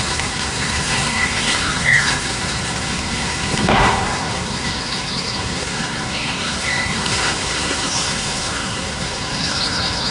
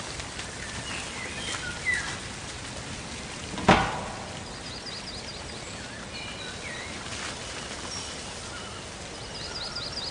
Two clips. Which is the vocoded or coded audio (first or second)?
first